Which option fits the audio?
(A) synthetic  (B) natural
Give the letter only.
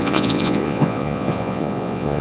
A